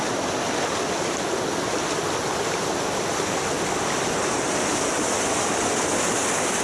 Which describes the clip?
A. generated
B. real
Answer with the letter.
B